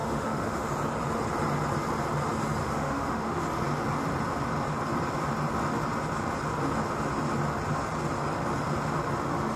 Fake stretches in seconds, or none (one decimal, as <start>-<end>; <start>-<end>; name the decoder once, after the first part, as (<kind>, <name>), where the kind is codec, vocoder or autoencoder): 0.0-0.7 (autoencoder, DAC-VAE); 2.6-3.4